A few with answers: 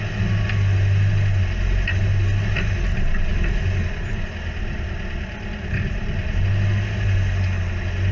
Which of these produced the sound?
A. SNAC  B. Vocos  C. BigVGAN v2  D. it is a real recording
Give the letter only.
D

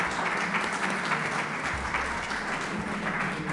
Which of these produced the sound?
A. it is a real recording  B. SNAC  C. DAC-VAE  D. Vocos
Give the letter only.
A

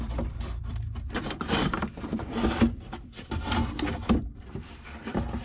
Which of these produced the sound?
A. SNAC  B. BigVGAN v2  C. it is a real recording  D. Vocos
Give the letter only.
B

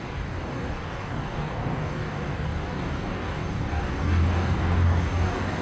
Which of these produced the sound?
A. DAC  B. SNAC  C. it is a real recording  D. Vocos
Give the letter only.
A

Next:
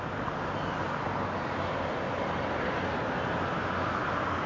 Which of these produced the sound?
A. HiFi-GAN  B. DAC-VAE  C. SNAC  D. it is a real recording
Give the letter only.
D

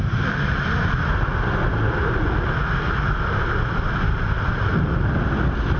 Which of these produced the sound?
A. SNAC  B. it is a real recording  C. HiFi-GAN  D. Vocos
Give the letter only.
B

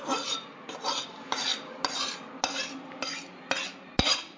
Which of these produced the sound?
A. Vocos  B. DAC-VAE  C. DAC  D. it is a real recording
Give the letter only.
D